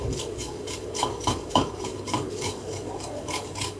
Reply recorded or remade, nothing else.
remade